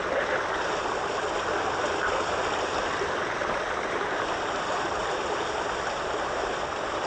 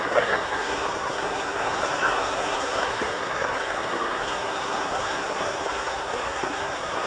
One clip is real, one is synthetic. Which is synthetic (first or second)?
second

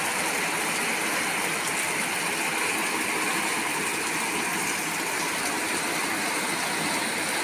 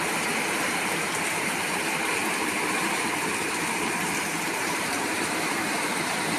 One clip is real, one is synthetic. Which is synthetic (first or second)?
second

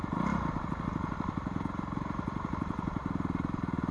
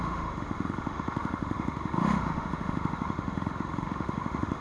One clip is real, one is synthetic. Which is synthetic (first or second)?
second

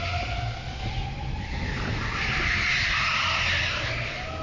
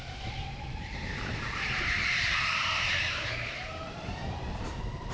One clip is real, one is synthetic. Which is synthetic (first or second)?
second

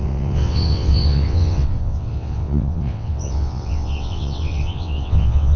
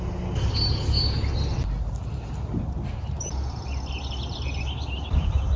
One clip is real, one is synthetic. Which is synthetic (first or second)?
first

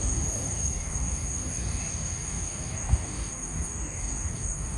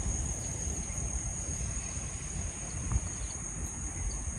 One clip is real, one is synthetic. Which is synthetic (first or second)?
first